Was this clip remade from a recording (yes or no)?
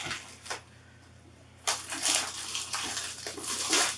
no